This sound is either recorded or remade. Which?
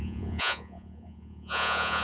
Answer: remade